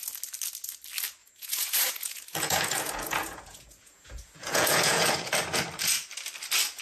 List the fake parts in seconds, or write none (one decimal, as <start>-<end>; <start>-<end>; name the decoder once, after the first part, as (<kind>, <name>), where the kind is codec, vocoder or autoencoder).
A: 1.2-5.3 (vocoder, Vocos)